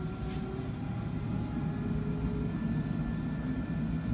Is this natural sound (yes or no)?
yes